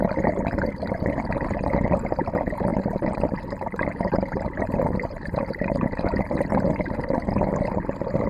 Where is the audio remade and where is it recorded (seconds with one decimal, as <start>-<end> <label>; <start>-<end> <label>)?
0.0-2.7 recorded; 2.7-6.9 remade; 6.9-8.3 recorded